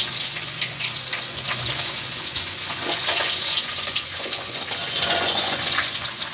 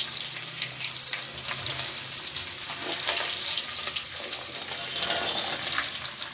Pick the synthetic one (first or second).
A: first